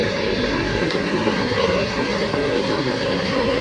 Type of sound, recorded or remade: remade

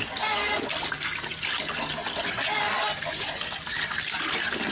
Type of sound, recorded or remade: recorded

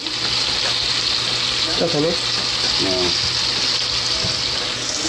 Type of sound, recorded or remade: recorded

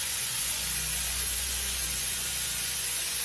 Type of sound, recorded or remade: remade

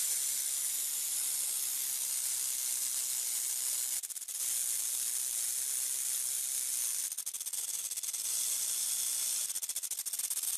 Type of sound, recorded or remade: recorded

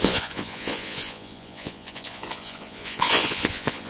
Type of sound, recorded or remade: remade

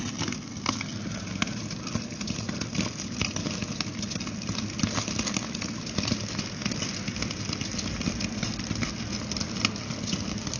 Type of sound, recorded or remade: recorded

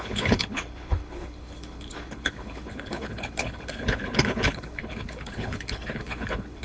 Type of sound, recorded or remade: remade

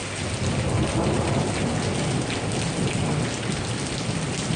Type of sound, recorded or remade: recorded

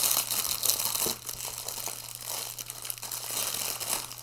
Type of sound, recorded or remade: recorded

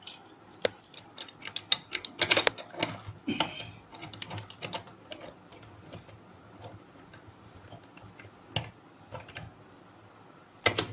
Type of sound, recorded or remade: recorded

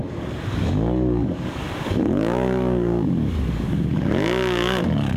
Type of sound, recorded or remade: remade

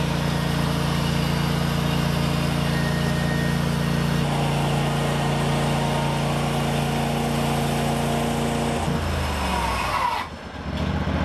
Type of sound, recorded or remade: recorded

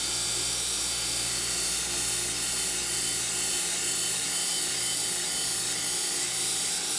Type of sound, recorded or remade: recorded